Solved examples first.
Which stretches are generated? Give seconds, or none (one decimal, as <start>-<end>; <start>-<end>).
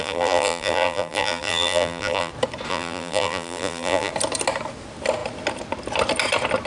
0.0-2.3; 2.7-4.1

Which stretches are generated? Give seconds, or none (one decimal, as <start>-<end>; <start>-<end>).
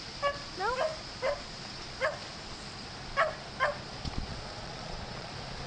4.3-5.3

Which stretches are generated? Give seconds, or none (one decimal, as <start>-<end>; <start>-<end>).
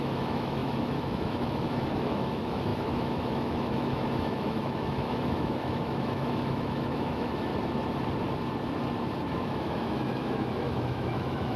0.0-7.5; 9.2-11.6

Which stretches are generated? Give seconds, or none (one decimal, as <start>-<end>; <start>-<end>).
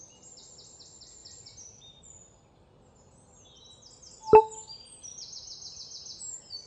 none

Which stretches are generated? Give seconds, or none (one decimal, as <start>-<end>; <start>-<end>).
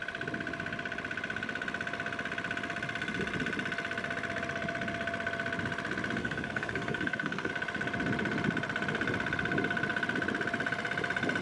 6.2-7.5